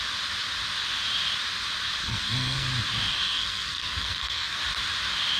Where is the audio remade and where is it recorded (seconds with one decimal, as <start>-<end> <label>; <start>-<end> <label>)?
0.0-2.0 recorded; 2.0-2.7 remade; 2.7-3.1 recorded; 3.1-4.6 remade; 4.6-5.4 recorded